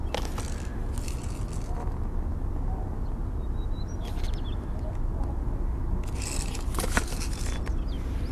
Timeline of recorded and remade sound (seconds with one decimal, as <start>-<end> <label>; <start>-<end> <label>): 0.0-8.3 recorded